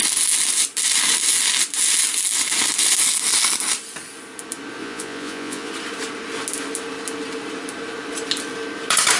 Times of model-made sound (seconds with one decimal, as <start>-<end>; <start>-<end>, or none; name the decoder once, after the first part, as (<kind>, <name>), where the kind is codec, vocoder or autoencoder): 4.8-5.7 (vocoder, Vocos)